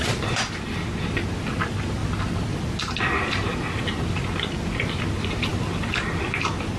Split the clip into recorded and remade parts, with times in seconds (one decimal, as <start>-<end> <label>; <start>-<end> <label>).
0.0-6.8 recorded